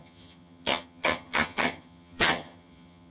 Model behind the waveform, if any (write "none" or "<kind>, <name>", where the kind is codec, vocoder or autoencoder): vocoder, HiFi-GAN